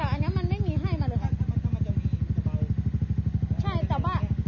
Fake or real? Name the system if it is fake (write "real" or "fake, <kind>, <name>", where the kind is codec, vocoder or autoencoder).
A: real